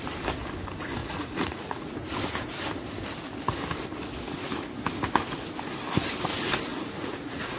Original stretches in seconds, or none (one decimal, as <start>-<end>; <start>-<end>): 0.0-1.0; 1.9-6.7